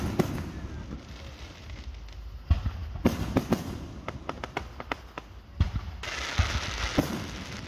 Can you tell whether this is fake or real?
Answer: real